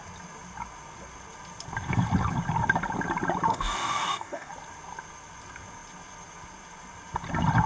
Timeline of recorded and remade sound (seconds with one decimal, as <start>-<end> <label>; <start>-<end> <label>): 0.0-3.5 recorded; 3.5-4.5 remade; 4.5-7.7 recorded